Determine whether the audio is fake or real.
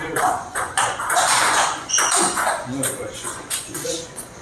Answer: fake